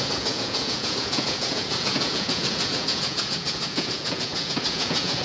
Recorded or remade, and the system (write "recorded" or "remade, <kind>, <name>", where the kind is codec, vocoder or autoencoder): remade, vocoder, Vocos